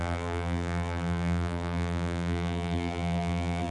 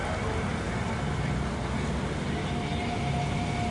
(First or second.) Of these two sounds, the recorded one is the second